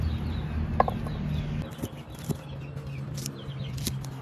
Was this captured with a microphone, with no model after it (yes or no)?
yes